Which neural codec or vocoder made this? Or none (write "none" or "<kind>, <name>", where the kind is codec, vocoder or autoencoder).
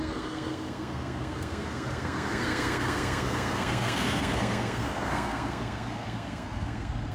codec, SNAC